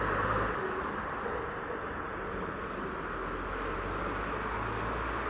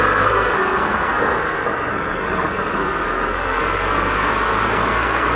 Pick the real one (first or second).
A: first